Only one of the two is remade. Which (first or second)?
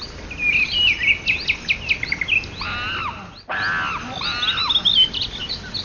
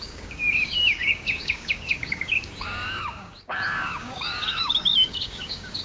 second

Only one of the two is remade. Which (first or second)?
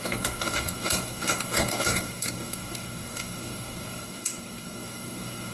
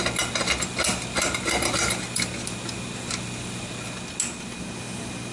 first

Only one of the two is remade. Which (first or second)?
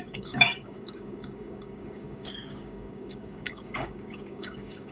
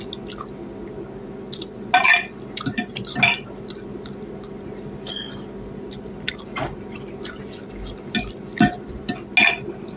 first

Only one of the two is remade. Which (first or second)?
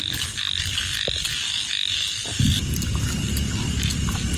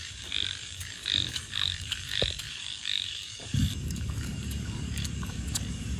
second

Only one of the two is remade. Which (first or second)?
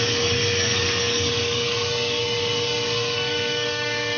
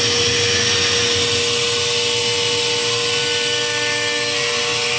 first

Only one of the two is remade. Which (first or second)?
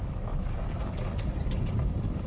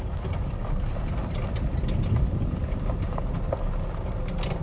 first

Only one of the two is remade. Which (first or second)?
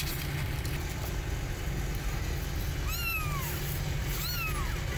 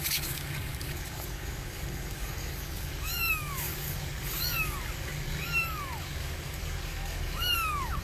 second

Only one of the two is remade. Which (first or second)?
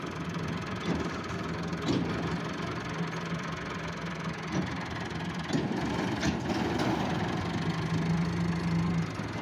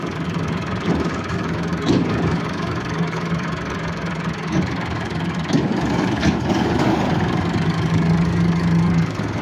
second